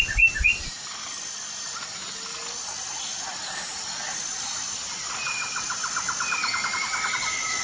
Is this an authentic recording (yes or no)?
yes